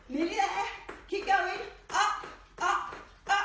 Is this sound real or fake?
real